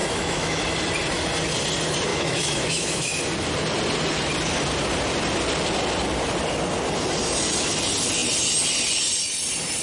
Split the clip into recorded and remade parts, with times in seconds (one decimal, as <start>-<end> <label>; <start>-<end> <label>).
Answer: 0.0-0.6 remade; 0.6-2.1 recorded; 2.1-3.2 remade; 3.2-9.8 recorded